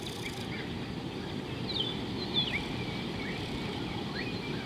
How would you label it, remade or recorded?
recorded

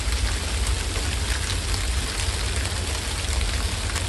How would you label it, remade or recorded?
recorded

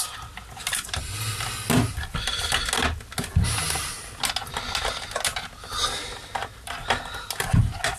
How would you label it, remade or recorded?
recorded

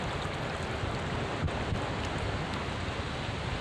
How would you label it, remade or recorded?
recorded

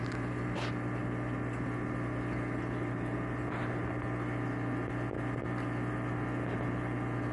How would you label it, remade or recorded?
recorded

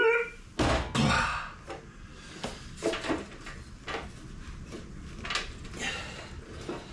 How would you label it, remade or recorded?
recorded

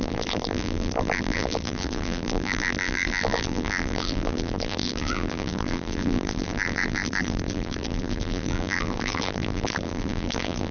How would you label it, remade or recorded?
remade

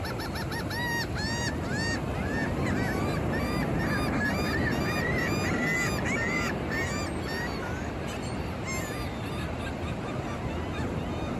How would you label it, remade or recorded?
recorded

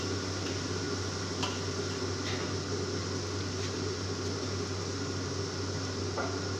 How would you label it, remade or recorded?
recorded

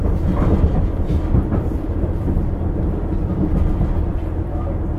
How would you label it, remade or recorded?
remade